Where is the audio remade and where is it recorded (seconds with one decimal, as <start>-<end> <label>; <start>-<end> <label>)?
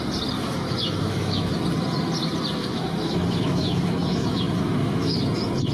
0.0-0.4 recorded; 0.4-1.6 remade; 1.6-2.6 recorded; 2.6-5.2 remade; 5.2-5.7 recorded